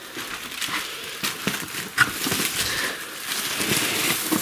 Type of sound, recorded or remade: recorded